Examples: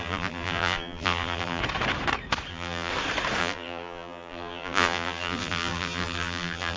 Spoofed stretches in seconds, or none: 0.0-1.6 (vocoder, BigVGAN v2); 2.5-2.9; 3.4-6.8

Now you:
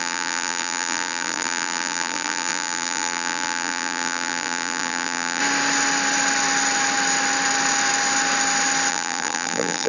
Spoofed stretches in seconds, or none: 0.0-5.4 (vocoder, BigVGAN v2); 8.9-9.9

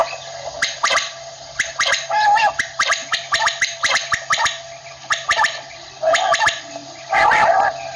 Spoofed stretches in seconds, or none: 0.0-8.0 (vocoder, BigVGAN v2)

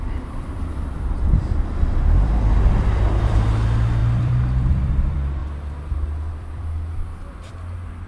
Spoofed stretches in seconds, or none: 0.0-1.5 (vocoder, BigVGAN v2); 2.7-5.4; 6.3-8.1